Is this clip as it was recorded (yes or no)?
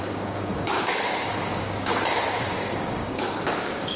no